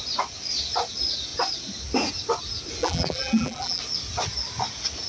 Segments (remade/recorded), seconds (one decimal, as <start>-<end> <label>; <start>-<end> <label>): 0.0-2.8 recorded; 2.8-3.8 remade; 3.8-5.1 recorded